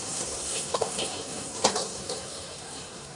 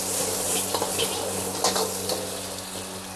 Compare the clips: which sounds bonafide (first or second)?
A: second